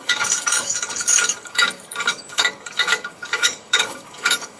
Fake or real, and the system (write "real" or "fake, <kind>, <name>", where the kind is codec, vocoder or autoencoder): fake, codec, DAC